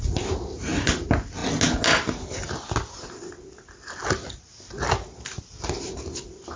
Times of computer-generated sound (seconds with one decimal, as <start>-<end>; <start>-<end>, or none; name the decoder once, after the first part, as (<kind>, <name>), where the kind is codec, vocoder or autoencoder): none